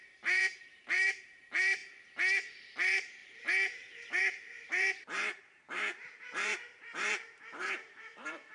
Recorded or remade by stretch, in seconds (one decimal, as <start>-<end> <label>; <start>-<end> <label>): 0.0-1.8 remade; 1.8-2.6 recorded; 2.6-3.2 remade; 3.2-4.2 recorded; 4.2-8.5 remade